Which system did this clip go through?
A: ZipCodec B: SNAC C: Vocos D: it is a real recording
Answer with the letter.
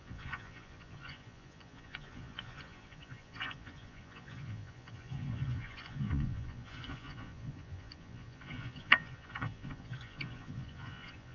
C